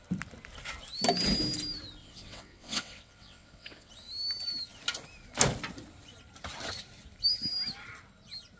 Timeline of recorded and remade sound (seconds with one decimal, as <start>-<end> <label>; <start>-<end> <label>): 0.0-2.0 recorded; 2.0-3.9 remade; 3.9-8.6 recorded